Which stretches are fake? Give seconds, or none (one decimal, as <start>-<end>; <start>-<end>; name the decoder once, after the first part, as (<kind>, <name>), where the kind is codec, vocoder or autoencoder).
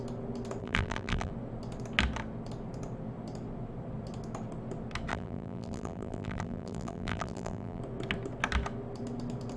0.6-1.3 (vocoder, BigVGAN v2); 5.1-7.8